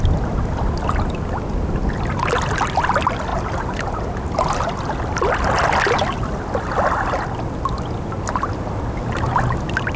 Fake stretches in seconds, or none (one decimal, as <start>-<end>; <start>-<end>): none